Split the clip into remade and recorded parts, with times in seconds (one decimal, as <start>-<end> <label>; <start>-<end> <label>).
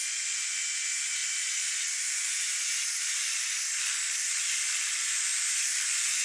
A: 0.0-6.2 recorded